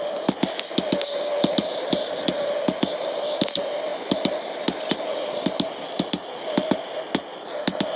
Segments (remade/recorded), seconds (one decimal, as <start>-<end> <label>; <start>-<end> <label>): 0.0-3.9 recorded; 3.9-6.4 remade; 6.4-8.0 recorded